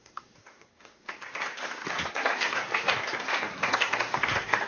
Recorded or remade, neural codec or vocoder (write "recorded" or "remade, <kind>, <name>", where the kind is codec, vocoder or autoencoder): remade, codec, SNAC